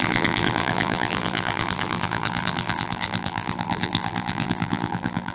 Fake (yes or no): yes